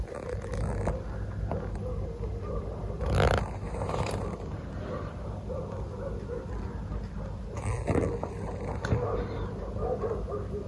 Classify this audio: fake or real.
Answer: real